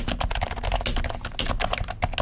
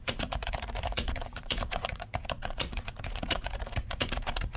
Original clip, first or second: first